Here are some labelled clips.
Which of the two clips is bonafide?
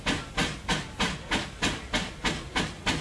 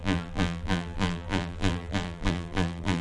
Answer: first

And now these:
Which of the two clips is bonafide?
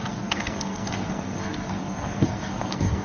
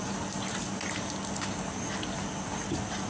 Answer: second